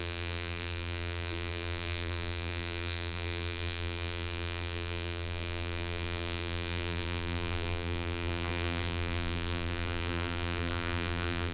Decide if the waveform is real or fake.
fake